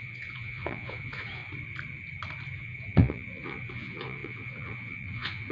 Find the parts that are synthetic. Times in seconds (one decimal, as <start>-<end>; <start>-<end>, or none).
0.0-1.4; 2.6-5.5